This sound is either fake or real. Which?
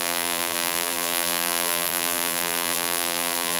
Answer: fake